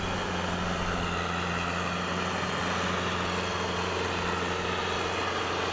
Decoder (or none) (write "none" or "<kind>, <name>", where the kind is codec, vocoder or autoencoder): none